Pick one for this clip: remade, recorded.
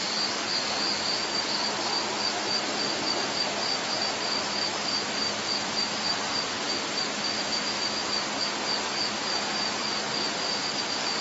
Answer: recorded